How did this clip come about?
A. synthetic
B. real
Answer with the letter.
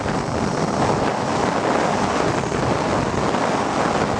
B